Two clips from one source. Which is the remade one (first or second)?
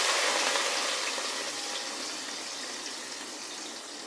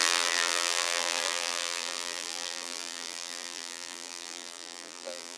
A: second